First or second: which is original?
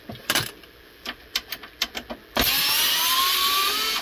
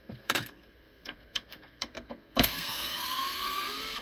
first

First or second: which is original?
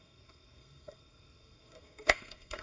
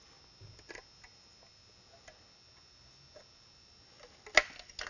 second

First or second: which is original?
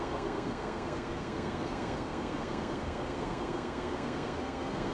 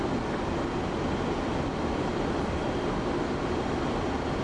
second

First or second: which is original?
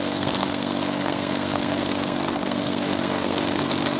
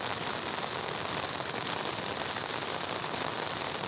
second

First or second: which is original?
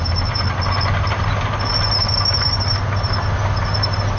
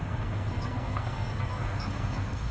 first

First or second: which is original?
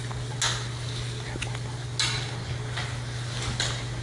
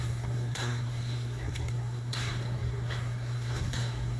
first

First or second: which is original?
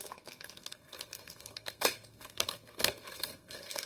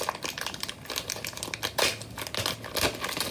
second